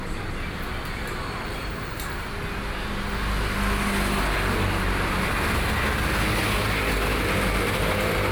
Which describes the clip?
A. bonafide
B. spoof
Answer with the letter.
A